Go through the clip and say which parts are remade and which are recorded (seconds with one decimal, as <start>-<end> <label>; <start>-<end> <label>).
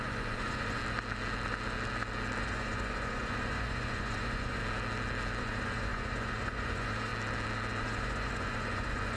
0.0-0.8 remade; 0.8-2.4 recorded; 2.4-4.6 remade; 4.6-5.4 recorded; 5.4-7.1 remade; 7.1-7.8 recorded; 7.8-9.2 remade